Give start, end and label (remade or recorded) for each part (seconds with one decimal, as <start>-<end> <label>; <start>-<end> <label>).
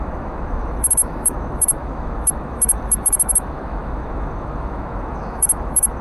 0.0-6.0 remade